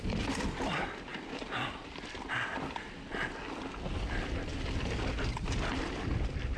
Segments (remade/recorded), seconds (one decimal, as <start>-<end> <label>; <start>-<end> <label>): 0.0-6.6 recorded